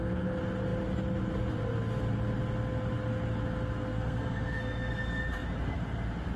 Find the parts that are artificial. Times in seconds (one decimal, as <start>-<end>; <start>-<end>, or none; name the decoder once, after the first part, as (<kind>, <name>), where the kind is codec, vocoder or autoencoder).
3.9-4.9 (codec, SNAC)